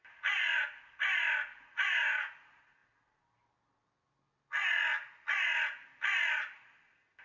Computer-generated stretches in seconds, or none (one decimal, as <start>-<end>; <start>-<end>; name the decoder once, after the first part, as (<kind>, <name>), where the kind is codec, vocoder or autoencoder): 0.0-2.8 (vocoder, BigVGAN v2); 6.3-7.2